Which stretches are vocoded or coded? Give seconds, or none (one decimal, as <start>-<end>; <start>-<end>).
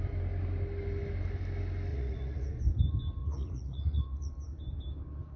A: 1.9-2.5; 3.2-4.3